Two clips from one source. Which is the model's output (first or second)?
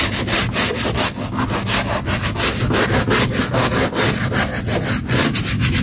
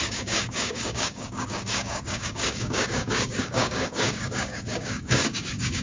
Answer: second